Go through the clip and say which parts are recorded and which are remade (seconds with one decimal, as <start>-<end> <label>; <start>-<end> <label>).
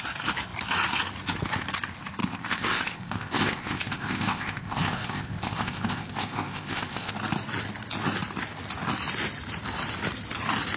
0.0-2.2 recorded; 2.2-7.1 remade; 7.1-10.8 recorded